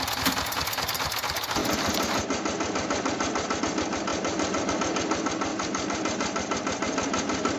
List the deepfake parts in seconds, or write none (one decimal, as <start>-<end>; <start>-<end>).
1.6-3.6; 4.1-4.7; 5.5-7.6